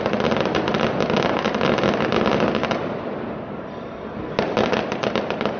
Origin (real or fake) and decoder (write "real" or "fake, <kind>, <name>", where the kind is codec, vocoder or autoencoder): real